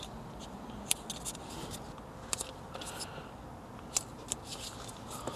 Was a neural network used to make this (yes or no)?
no